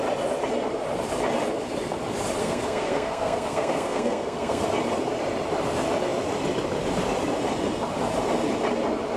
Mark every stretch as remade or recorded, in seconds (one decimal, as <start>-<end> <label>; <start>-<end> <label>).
0.0-2.4 recorded; 2.4-4.7 remade; 4.7-9.2 recorded